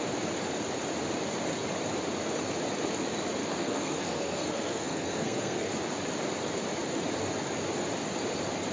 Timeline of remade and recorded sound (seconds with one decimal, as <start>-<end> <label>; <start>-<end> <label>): 0.0-3.4 recorded; 3.4-5.7 remade; 5.7-8.7 recorded